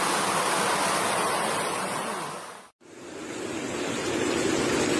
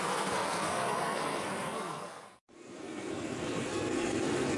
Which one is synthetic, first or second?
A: second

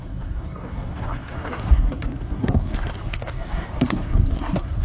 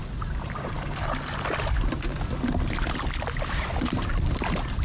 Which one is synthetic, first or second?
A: first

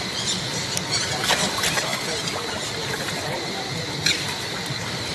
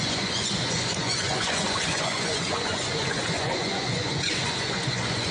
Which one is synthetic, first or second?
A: second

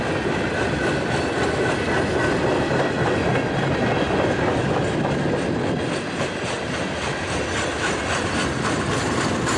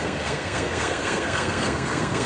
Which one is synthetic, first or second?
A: second